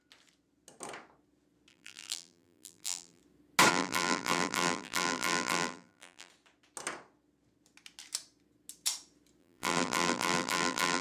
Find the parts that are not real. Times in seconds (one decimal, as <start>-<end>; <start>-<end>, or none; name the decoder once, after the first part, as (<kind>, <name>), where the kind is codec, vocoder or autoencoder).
1.7-3.2 (vocoder, BigVGAN v2); 3.7-6.3; 9.4-11.0